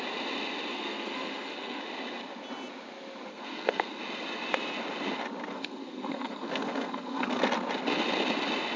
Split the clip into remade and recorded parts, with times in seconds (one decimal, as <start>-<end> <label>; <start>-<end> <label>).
0.0-0.7 recorded; 0.7-1.8 remade; 1.8-3.3 recorded; 3.3-4.0 remade; 4.0-5.5 recorded; 5.5-7.4 remade; 7.4-8.8 recorded